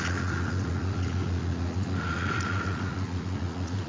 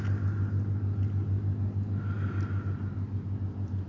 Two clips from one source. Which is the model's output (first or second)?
first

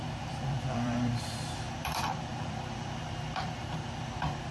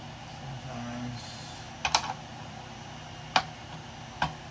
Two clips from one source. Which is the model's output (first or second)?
first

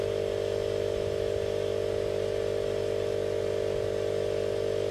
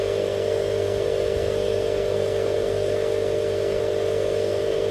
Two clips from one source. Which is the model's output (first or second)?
second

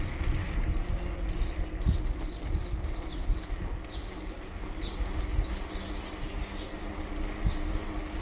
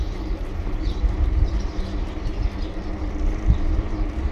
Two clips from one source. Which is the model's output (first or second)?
second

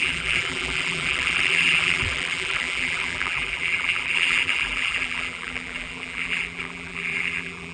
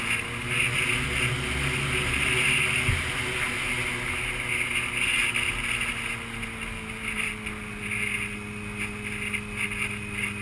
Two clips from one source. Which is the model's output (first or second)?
first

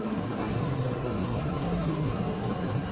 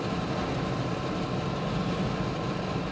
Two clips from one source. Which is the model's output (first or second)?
first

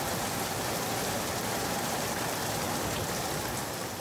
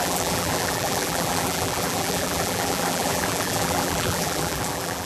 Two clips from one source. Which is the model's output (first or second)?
second